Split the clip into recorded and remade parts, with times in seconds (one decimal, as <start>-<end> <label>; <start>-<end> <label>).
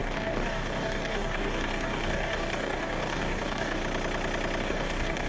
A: 0.0-3.8 remade; 3.8-4.6 recorded; 4.6-5.3 remade